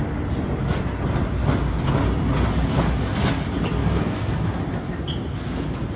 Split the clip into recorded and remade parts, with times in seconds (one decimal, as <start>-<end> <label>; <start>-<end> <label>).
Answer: 0.0-3.8 recorded; 3.8-4.6 remade; 4.6-6.0 recorded

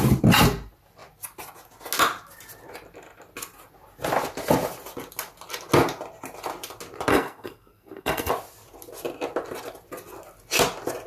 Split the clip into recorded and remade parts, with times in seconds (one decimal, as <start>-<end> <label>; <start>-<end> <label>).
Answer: 0.0-7.1 recorded; 7.1-8.3 remade; 8.3-11.1 recorded